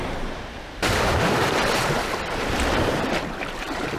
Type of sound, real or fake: fake